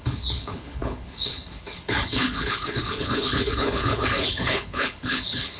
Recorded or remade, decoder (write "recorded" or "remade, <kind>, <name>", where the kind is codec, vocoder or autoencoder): remade, codec, HILCodec